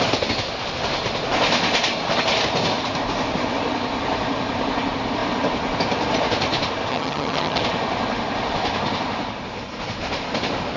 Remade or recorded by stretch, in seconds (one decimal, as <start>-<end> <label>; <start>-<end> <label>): 0.0-6.9 recorded; 6.9-7.6 remade; 7.6-10.8 recorded